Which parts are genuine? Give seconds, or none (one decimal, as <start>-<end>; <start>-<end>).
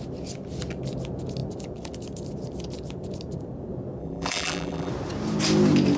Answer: 0.0-4.0; 4.9-6.0